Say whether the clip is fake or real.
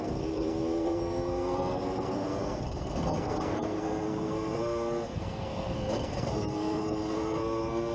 fake